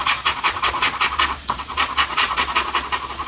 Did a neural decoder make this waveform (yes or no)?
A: yes